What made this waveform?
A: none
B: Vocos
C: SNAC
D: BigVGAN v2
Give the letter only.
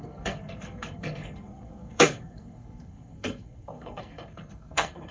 C